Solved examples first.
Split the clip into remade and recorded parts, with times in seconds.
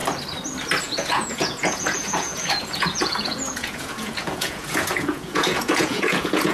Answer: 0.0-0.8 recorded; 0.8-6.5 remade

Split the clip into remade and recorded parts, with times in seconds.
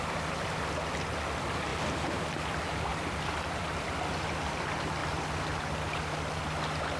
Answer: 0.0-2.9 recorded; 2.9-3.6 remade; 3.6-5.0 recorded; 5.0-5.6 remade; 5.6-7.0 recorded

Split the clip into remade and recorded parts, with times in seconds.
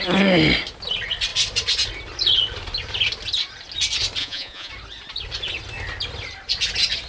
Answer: 0.0-4.2 recorded; 4.2-4.7 remade; 4.7-7.1 recorded